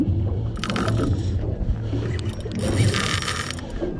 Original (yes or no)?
yes